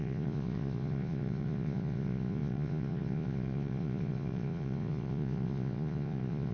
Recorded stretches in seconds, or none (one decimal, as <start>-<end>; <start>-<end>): none